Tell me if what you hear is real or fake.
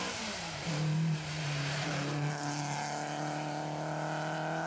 fake